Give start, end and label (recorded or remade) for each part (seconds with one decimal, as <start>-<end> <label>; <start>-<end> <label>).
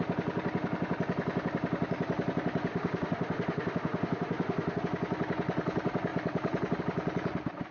0.0-2.7 recorded; 2.7-4.8 remade; 4.8-7.7 recorded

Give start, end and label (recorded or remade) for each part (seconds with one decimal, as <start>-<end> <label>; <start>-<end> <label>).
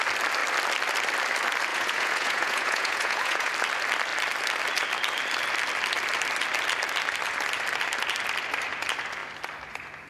0.0-1.7 recorded; 1.7-3.5 remade; 3.5-10.1 recorded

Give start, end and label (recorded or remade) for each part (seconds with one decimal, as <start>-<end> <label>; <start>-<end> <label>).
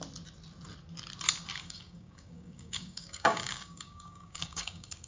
0.0-1.6 recorded; 1.6-5.1 remade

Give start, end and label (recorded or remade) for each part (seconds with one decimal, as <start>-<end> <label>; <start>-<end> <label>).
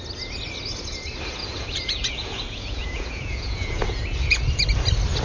0.0-1.4 recorded; 1.4-4.5 remade; 4.5-5.2 recorded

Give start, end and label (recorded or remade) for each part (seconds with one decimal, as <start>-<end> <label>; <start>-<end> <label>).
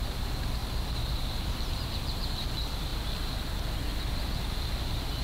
0.0-5.2 recorded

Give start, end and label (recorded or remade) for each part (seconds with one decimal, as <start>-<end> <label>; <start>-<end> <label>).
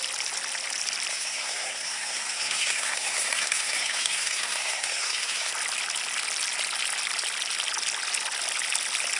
0.0-1.1 recorded; 1.1-5.5 remade; 5.5-9.2 recorded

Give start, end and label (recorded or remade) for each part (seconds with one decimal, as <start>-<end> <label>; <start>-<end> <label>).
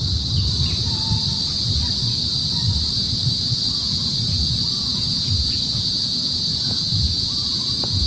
0.0-4.9 recorded; 4.9-8.1 remade